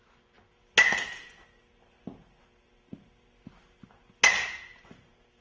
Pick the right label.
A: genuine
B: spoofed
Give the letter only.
A